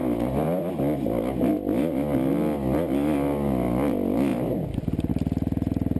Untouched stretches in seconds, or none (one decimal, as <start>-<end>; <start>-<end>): 0.0-6.0